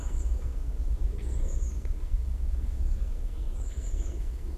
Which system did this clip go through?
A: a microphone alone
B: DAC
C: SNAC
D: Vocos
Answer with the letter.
C